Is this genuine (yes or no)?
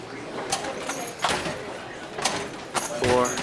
yes